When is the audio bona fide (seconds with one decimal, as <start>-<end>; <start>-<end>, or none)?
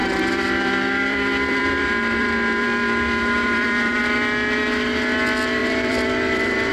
4.0-5.6